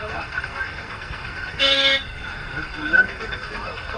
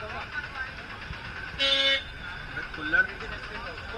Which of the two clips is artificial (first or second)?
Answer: first